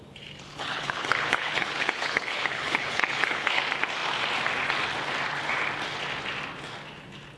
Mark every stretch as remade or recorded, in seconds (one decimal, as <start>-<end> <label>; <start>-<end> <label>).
0.0-0.5 recorded; 0.5-3.6 remade; 3.6-7.4 recorded